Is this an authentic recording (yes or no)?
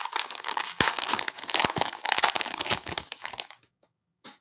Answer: no